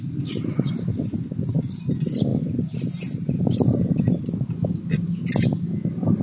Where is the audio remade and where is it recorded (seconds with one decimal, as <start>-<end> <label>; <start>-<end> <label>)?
0.0-6.2 recorded